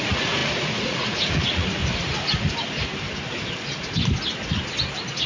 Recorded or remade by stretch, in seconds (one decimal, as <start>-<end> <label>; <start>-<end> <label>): 0.0-1.8 remade; 1.8-5.3 recorded